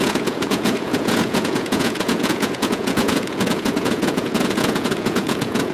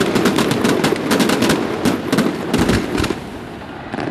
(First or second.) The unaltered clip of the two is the second